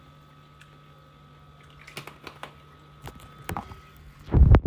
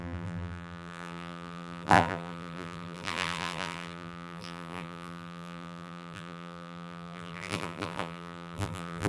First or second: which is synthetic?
second